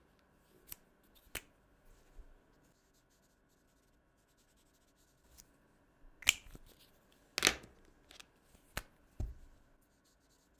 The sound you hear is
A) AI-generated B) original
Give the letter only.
B